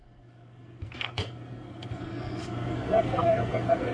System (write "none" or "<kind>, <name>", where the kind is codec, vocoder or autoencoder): codec, SNAC